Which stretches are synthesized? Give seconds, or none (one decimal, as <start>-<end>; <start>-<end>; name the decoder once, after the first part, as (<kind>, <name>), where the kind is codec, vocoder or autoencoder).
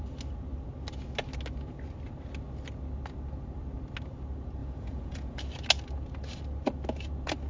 4.6-5.4 (vocoder, Vocos)